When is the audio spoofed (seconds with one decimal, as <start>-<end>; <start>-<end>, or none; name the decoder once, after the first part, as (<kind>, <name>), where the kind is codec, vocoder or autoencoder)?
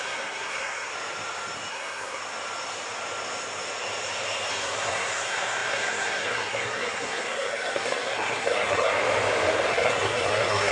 0.0-0.9 (codec, SNAC); 1.7-2.2; 4.5-8.9; 9.7-10.7